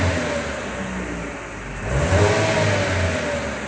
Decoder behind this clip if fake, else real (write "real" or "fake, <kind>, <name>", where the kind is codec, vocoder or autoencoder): real